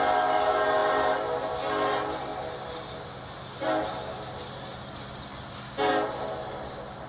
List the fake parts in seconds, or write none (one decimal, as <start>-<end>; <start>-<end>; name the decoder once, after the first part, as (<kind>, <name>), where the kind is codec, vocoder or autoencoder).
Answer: none